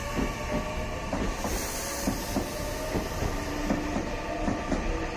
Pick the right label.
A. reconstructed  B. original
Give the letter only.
B